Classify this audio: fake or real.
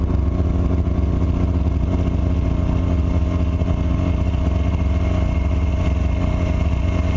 real